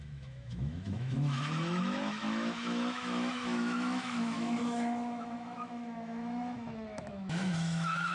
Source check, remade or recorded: remade